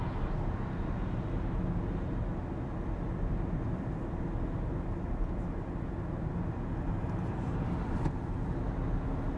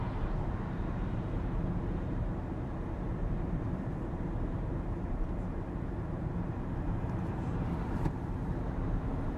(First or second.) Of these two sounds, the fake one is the second